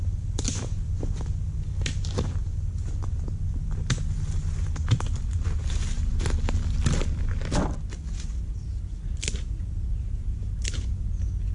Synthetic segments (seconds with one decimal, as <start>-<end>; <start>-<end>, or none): 2.4-2.9